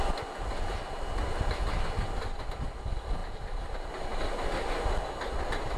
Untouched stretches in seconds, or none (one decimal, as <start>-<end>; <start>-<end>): 0.0-3.2; 3.9-5.8